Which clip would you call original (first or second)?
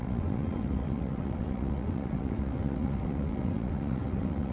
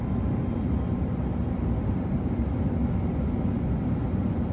second